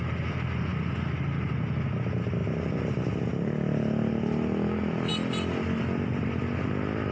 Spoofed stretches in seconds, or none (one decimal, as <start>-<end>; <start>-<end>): none